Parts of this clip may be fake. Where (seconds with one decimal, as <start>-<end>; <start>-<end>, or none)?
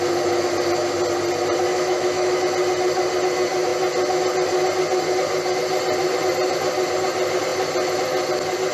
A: 1.7-2.4